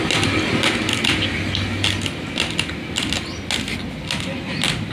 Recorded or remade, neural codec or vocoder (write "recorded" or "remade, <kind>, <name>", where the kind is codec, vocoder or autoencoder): recorded